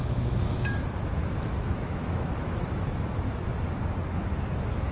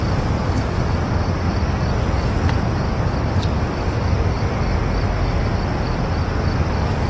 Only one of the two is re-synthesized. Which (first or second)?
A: first